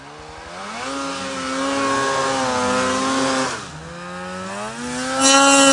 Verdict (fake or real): real